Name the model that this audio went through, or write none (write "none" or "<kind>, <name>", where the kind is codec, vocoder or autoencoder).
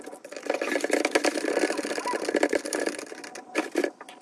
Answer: none